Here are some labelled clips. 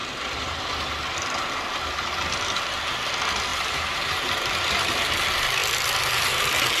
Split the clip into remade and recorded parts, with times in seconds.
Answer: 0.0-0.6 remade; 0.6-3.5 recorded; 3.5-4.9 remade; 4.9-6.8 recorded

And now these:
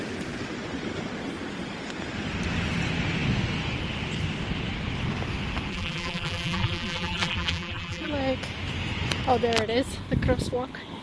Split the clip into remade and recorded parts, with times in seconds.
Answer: 0.0-5.7 recorded; 5.7-8.1 remade; 8.1-11.0 recorded

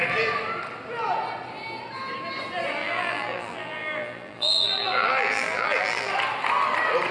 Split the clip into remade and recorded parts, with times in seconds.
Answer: 0.0-2.8 recorded; 2.8-6.1 remade; 6.1-7.1 recorded